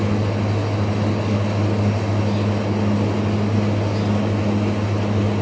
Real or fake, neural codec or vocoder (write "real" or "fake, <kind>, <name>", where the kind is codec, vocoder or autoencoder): real